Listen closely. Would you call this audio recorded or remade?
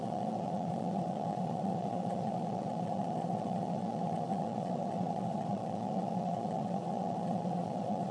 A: remade